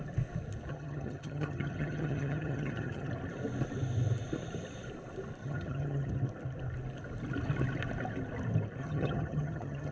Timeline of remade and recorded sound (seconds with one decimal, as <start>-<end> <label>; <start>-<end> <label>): 0.0-0.7 recorded; 0.7-3.1 remade; 3.1-5.4 recorded; 5.4-6.1 remade; 6.1-8.8 recorded; 8.8-9.9 remade